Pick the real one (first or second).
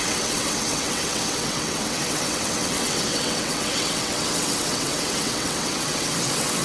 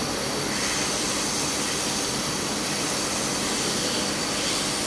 second